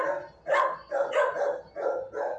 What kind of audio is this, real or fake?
real